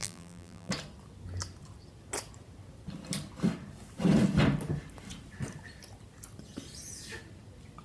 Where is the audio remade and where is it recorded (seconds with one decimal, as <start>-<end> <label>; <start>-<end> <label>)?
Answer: 0.0-0.7 remade; 0.7-7.8 recorded